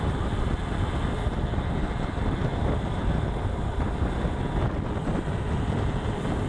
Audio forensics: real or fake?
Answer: real